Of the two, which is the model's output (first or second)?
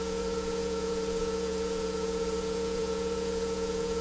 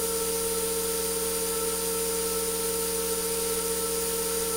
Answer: first